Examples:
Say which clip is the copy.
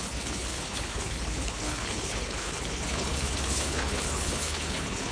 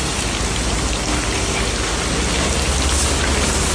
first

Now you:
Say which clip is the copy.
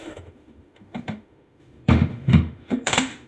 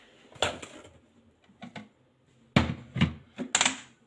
first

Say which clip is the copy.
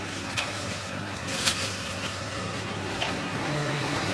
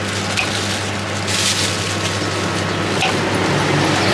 first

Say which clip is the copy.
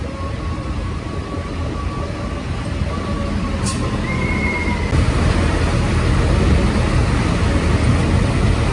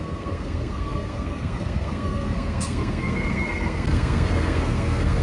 second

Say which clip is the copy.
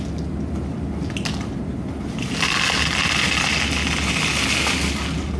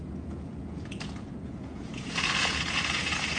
second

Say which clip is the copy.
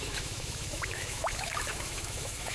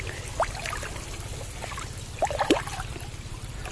first